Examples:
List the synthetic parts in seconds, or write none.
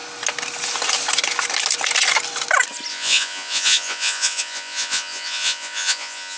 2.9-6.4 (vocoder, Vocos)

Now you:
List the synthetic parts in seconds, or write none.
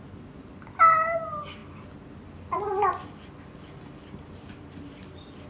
none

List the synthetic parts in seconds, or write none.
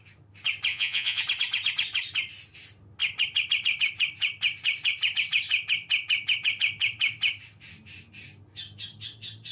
0.7-1.2 (vocoder, Vocos)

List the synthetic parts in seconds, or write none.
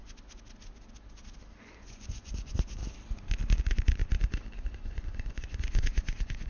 1.6-2.8 (vocoder, Vocos); 3.6-4.0; 4.7-6.5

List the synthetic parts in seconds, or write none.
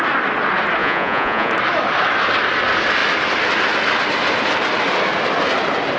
0.8-1.5 (vocoder, Vocos)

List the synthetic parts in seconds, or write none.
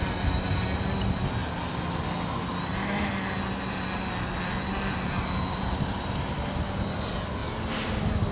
none